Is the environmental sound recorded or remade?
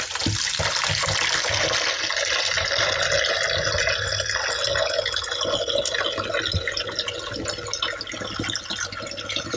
recorded